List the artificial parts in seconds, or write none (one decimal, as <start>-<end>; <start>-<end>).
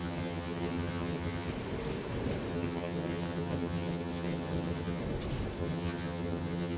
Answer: 0.0-1.5; 2.5-5.0; 5.6-6.8